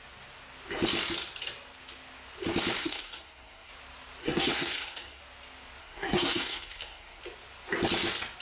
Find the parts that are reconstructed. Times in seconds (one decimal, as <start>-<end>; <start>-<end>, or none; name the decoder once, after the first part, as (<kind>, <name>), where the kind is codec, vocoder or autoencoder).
2.8-3.7 (codec, SNAC); 4.2-5.2; 5.8-7.2